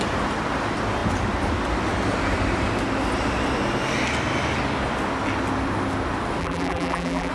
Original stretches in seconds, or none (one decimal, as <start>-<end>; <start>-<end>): 0.0-6.4